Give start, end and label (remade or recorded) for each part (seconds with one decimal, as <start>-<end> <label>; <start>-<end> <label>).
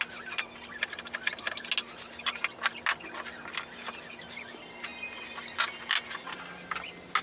0.0-7.2 recorded